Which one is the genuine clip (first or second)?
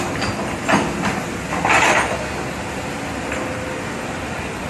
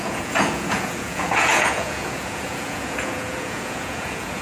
first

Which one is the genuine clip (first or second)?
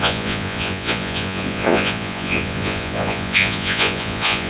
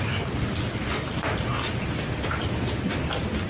second